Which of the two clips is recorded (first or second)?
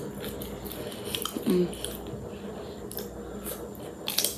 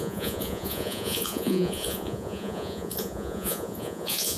first